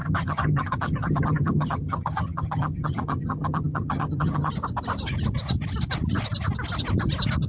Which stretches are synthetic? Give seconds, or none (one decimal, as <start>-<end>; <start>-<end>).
0.0-4.5